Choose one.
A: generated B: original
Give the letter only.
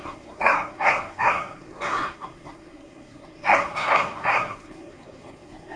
A